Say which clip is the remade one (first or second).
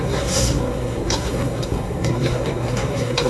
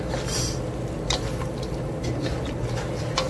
first